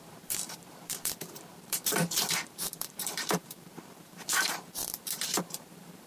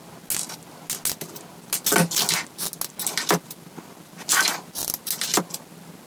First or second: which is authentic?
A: second